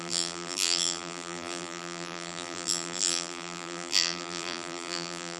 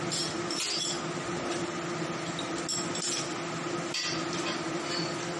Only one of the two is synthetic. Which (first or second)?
first